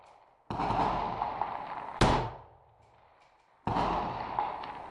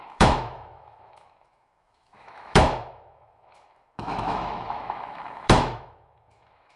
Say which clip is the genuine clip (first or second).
first